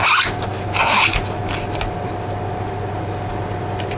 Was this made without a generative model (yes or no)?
yes